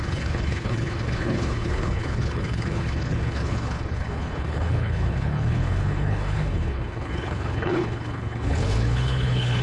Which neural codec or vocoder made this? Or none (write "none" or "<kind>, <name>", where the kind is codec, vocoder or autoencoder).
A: codec, HILCodec